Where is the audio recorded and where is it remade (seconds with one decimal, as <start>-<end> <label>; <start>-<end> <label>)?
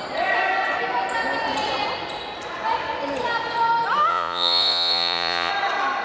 0.0-4.1 recorded; 4.1-5.5 remade; 5.5-6.0 recorded